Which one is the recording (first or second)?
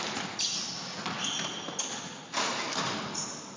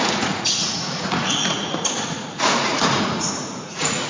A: first